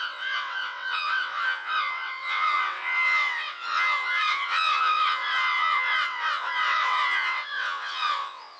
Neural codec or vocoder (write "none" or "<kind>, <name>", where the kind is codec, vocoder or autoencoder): vocoder, WaveNeXt